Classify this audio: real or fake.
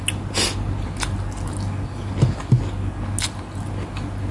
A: real